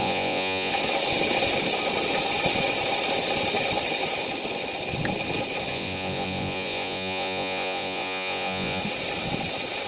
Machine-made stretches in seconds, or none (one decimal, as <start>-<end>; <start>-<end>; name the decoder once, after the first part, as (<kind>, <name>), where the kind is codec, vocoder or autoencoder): 0.0-0.7 (vocoder, Vocos); 5.7-8.8